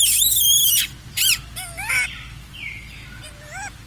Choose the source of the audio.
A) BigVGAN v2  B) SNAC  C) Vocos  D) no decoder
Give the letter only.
A